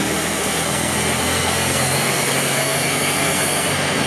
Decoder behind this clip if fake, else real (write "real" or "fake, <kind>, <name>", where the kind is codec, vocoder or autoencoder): fake, codec, SNAC